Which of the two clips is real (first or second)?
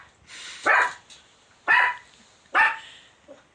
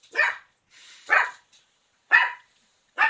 first